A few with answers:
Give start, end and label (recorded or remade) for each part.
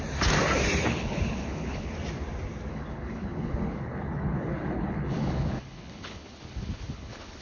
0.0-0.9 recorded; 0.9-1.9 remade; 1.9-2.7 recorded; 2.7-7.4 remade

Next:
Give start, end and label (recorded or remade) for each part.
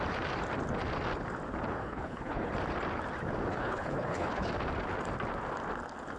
0.0-1.8 recorded; 1.8-2.5 remade; 2.5-3.5 recorded; 3.5-4.5 remade; 4.5-6.2 recorded